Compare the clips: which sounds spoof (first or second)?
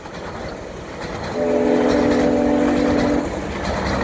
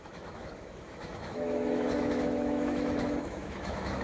second